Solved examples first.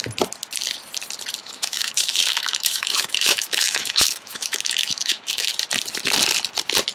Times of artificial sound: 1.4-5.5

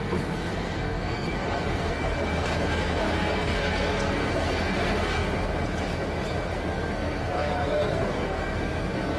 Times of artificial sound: 0.0-5.5; 6.5-9.2

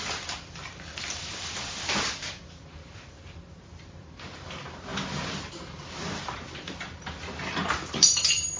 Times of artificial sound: 0.0-4.9; 5.5-8.6

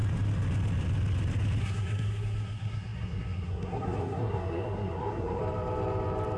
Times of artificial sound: 1.6-5.4